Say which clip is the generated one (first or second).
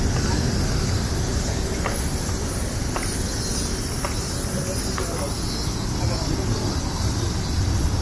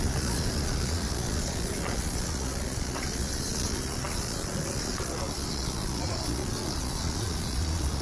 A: second